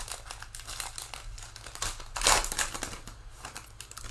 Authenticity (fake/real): real